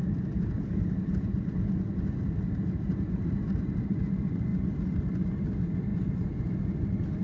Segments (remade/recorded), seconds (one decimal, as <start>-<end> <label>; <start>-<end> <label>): 0.0-7.2 recorded

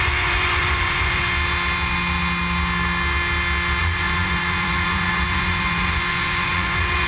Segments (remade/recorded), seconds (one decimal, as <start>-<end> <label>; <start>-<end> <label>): 0.0-1.2 remade; 1.2-3.8 recorded; 3.8-7.1 remade

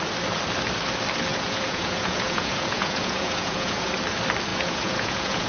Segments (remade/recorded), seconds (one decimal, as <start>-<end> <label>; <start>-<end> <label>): 0.0-1.3 recorded; 1.3-3.9 remade; 3.9-4.5 recorded; 4.5-5.5 remade

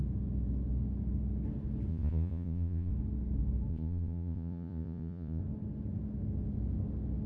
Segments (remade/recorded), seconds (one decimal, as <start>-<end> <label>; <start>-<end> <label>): 0.0-1.9 recorded; 1.9-2.9 remade; 2.9-3.7 recorded; 3.7-5.4 remade; 5.4-7.3 recorded

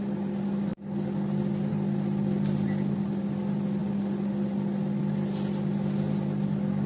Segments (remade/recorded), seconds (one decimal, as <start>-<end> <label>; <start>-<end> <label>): 0.0-6.9 recorded

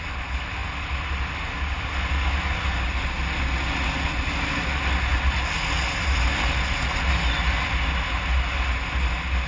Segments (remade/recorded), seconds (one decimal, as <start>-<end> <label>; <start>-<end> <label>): 0.0-9.5 recorded